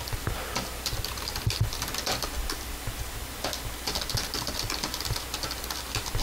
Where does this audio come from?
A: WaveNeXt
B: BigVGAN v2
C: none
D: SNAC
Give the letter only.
C